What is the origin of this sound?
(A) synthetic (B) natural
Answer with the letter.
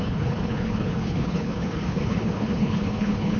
A